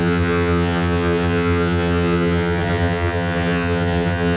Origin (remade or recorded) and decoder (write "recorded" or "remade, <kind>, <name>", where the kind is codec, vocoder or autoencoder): remade, vocoder, HiFi-GAN